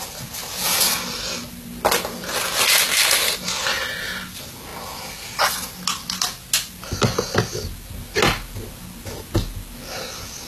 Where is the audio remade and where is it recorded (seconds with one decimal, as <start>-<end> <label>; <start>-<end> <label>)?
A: 0.0-10.5 recorded